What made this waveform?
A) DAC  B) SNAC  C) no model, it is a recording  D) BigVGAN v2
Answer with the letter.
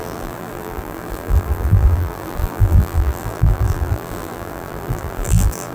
D